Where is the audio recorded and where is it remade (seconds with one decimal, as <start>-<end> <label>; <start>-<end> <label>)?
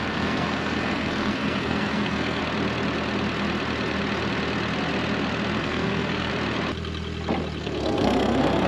0.0-2.4 remade; 2.4-5.6 recorded; 5.6-6.3 remade; 6.3-7.6 recorded; 7.6-8.7 remade